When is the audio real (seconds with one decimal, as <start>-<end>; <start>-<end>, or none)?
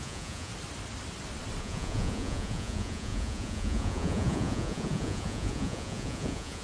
0.5-1.6